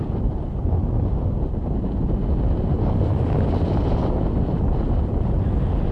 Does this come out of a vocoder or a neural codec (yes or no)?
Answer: no